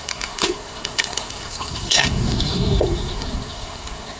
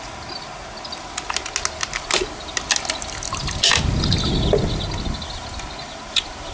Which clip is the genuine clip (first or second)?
second